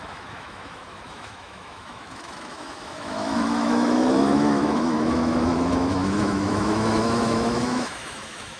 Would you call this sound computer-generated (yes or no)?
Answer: yes